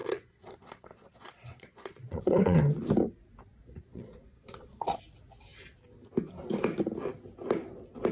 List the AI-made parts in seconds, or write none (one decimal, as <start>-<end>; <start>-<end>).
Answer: 0.0-2.6; 3.5-5.0